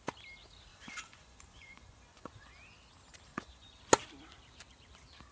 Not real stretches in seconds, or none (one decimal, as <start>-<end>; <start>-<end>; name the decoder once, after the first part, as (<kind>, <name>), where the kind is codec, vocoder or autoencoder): 0.7-2.5 (vocoder, Vocos); 3.3-3.8